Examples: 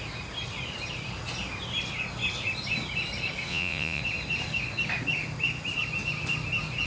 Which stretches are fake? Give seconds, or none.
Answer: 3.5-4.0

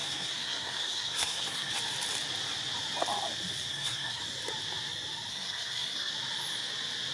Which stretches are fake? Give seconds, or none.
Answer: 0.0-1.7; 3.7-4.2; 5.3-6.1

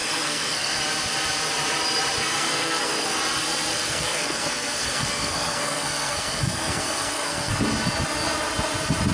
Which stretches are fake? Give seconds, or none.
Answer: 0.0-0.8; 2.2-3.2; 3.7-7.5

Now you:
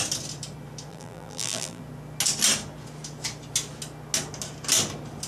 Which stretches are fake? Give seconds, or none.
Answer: 0.9-1.8